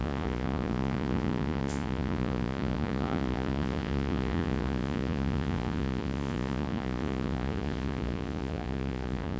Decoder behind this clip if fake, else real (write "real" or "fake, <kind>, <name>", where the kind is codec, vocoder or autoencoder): fake, vocoder, Vocos